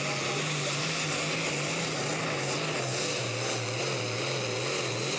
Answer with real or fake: real